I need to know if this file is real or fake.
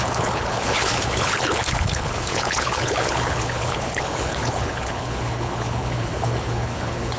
fake